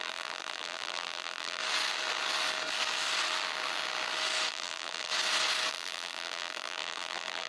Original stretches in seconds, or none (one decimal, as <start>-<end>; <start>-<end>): 1.6-4.5; 5.1-5.7